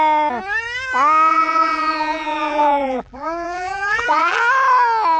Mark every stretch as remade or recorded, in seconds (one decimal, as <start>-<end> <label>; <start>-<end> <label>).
0.0-1.3 recorded; 1.3-4.4 remade; 4.4-5.2 recorded